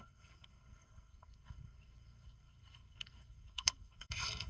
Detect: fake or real fake